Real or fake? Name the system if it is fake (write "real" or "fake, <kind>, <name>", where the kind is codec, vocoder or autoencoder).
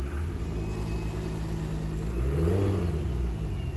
real